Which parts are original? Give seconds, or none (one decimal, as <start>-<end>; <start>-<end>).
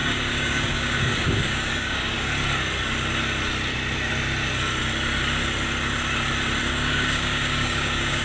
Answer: 2.3-6.7